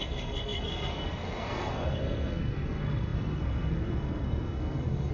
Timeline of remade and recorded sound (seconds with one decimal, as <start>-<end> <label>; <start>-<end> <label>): 0.0-5.1 remade